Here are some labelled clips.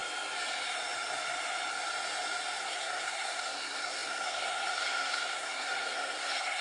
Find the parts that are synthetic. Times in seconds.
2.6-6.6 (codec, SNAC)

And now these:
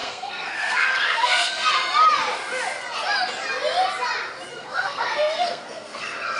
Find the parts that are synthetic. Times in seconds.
0.0-1.7 (codec, SNAC); 4.5-6.4

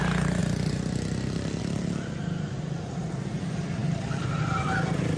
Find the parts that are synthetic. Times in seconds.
none

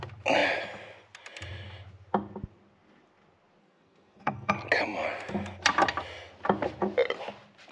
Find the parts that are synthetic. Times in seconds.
3.6-4.5 (codec, SNAC)

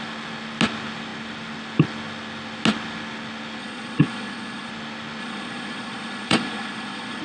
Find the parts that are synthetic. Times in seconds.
3.6-4.7 (vocoder, Vocos); 5.2-7.2

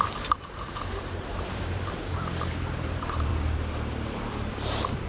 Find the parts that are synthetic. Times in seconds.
0.0-3.3 (vocoder, BigVGAN v2); 4.5-5.1

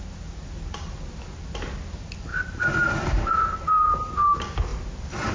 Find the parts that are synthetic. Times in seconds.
2.3-3.5 (vocoder, BigVGAN v2); 4.7-5.3

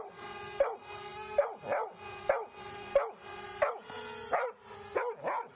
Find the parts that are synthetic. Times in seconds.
none